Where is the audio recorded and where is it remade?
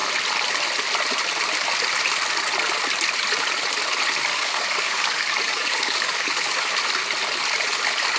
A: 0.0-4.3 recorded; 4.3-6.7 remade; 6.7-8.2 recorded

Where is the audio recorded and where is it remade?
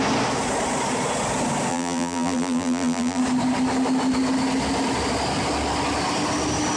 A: 0.0-1.7 recorded; 1.7-3.2 remade; 3.2-6.8 recorded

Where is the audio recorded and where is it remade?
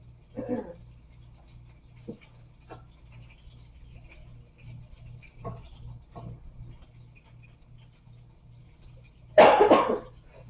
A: 0.0-8.6 recorded; 8.6-9.7 remade; 9.7-10.5 recorded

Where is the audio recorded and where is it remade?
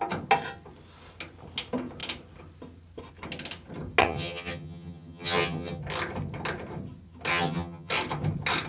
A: 0.0-4.0 recorded; 4.0-5.8 remade; 5.8-7.3 recorded; 7.3-7.9 remade; 7.9-8.7 recorded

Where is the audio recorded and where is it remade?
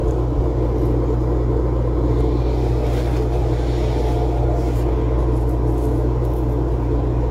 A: 0.0-7.3 recorded